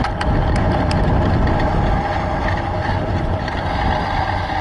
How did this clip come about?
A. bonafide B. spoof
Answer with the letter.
A